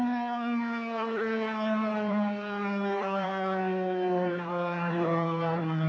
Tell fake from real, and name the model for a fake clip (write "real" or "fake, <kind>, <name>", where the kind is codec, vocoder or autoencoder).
fake, codec, SNAC